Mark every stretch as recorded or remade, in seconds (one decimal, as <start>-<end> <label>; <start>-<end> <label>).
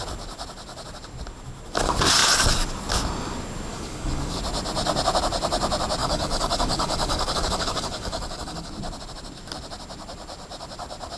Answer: 0.0-3.7 recorded; 3.7-4.4 remade; 4.4-6.0 recorded; 6.0-8.7 remade; 8.7-11.2 recorded